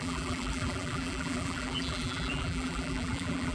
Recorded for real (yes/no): no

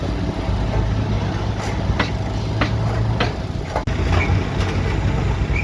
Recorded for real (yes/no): yes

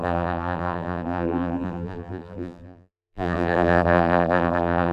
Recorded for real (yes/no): no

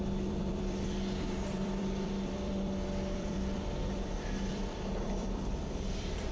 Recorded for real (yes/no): no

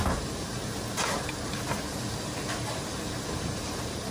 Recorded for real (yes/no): no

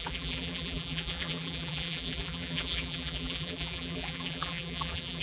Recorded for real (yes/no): no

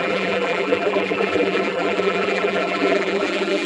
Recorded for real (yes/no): no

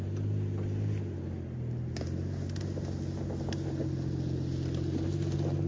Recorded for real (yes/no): yes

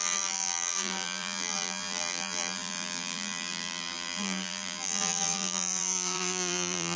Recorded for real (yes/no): no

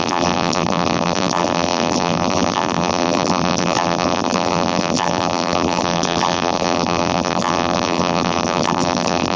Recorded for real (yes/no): no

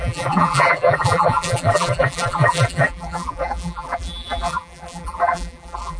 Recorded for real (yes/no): no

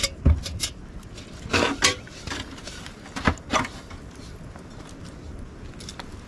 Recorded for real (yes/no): yes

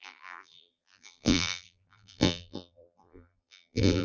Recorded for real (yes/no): no